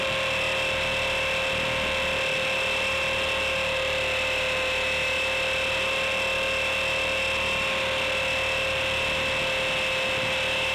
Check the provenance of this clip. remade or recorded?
recorded